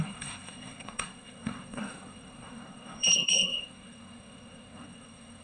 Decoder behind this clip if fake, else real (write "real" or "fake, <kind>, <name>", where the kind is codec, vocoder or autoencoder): fake, codec, SNAC